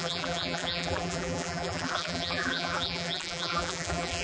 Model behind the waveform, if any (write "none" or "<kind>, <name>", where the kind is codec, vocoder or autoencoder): vocoder, BigVGAN v2